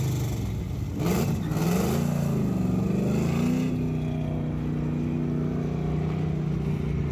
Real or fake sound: real